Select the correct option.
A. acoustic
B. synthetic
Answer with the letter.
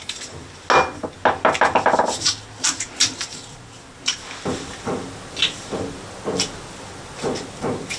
A